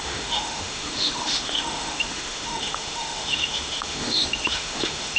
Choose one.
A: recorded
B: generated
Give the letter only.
B